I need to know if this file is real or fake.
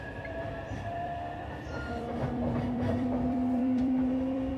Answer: fake